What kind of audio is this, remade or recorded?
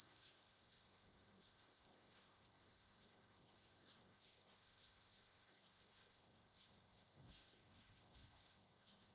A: remade